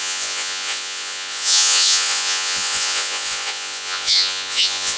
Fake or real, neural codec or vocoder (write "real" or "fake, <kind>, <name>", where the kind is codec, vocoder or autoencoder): fake, vocoder, Vocos